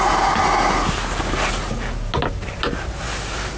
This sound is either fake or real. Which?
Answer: real